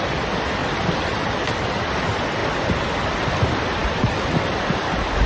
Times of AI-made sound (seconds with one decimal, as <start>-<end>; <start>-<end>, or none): 0.0-2.4; 3.3-5.3